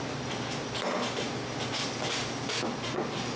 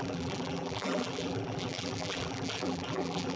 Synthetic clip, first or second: second